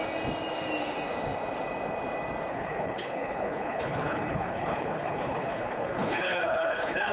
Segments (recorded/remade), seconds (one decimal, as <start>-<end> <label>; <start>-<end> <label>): 0.0-2.5 recorded; 2.5-7.1 remade